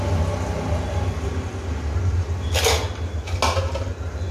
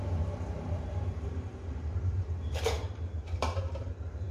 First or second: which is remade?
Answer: second